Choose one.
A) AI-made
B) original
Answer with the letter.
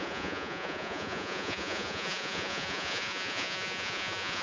A